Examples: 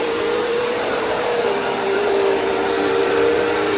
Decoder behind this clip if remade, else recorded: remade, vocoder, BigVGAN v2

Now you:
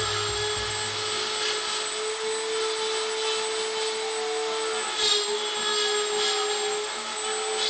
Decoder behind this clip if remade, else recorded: recorded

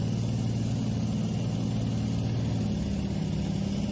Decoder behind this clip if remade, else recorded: recorded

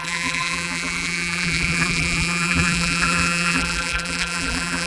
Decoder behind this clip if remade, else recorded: remade, vocoder, BigVGAN v2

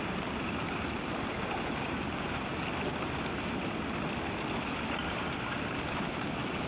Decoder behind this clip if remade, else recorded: remade, vocoder, BigVGAN v2